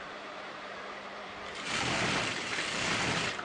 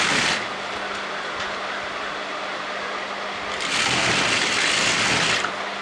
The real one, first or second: second